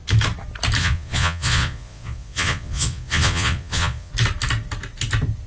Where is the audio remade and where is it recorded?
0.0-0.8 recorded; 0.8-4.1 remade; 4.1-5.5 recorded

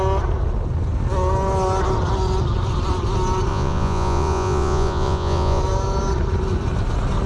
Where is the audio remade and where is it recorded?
0.0-3.5 recorded; 3.5-5.6 remade; 5.6-7.3 recorded